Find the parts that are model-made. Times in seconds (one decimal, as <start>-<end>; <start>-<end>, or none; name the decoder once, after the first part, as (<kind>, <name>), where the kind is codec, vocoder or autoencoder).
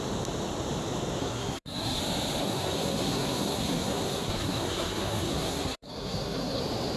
1.2-2.0 (codec, SNAC); 2.4-6.6